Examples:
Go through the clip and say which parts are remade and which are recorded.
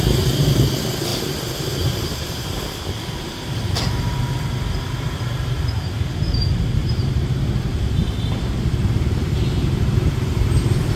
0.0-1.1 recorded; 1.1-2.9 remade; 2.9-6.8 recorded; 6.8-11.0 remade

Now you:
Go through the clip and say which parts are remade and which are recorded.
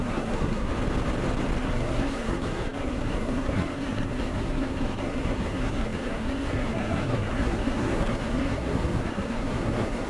0.0-0.7 remade; 0.7-1.6 recorded; 1.6-10.1 remade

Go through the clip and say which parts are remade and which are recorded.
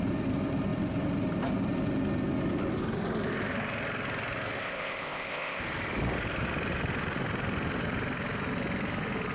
0.0-4.6 recorded; 4.6-5.6 remade; 5.6-9.3 recorded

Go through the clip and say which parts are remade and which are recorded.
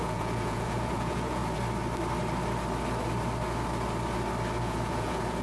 0.0-1.4 remade; 1.4-4.6 recorded; 4.6-5.4 remade